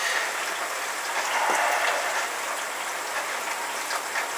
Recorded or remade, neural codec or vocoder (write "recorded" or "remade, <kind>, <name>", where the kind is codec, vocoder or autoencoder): recorded